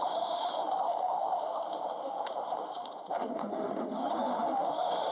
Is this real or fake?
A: fake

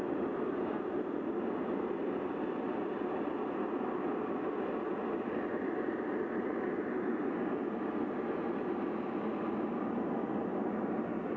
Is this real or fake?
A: real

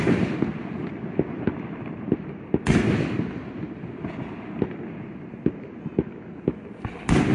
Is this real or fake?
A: real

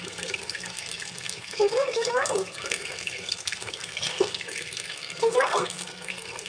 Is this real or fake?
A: fake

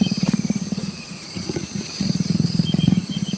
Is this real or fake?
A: fake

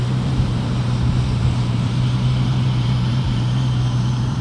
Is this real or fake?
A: fake